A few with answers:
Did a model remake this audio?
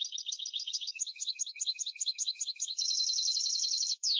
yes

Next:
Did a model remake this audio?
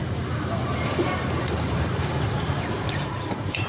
yes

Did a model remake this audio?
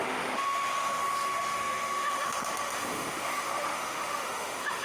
yes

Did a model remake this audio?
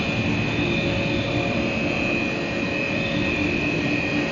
no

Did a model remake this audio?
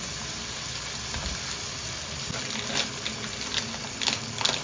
no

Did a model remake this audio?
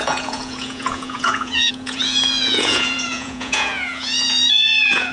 yes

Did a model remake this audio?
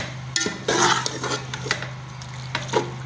no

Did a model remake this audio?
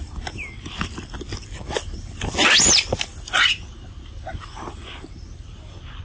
no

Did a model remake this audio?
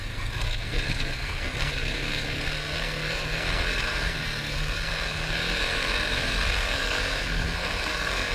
yes